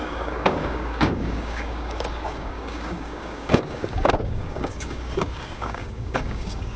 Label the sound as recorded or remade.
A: remade